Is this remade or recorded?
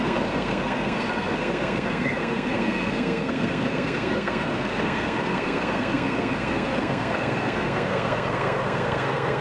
remade